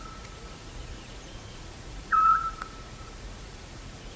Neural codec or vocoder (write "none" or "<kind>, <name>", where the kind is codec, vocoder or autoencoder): vocoder, Vocos